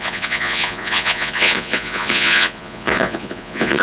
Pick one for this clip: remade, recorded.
remade